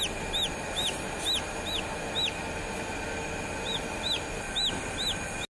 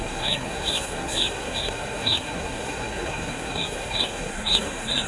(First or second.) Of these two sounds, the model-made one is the second